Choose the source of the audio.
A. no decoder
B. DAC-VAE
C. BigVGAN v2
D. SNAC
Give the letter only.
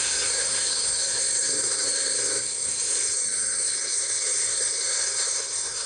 D